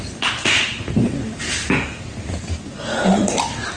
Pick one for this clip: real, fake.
real